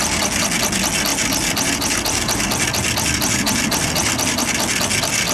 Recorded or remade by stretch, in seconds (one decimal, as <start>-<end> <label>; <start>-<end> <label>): 0.0-5.3 recorded